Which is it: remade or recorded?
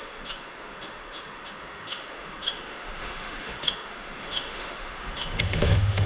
remade